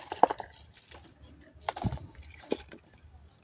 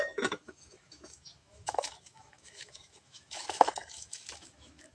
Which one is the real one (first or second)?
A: first